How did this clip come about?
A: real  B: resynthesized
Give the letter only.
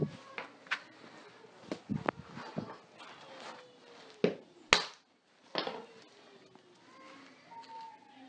A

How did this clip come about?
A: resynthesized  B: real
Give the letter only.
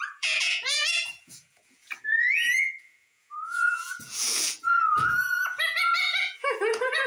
A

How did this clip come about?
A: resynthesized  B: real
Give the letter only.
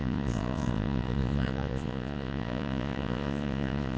A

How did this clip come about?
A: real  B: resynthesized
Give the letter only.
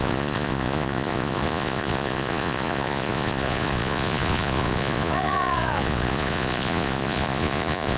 B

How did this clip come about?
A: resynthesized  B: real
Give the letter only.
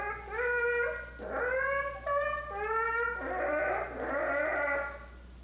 B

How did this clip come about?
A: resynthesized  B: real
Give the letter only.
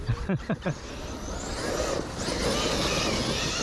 B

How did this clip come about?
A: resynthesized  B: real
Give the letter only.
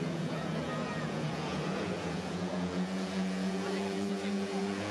A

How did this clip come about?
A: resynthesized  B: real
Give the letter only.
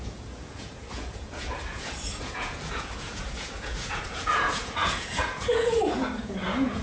A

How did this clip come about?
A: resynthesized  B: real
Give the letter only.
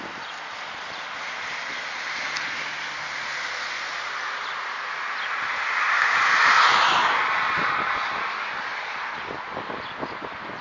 B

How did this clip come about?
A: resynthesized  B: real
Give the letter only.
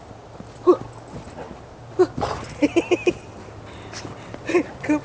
B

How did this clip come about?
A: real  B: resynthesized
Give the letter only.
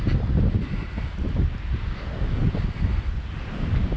A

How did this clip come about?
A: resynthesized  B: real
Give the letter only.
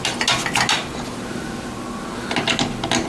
B